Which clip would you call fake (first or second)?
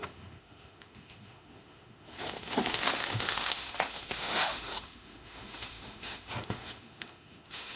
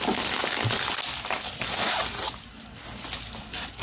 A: first